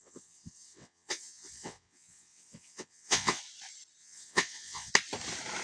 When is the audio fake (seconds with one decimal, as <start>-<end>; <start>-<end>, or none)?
0.0-3.4; 4.0-4.9